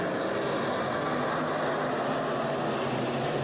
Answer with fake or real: real